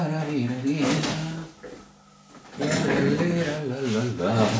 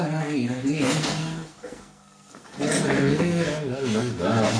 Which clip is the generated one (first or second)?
second